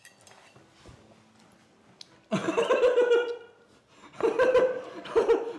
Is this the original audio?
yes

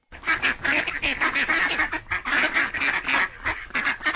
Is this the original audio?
yes